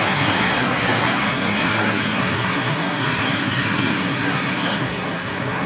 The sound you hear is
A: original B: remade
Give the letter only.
B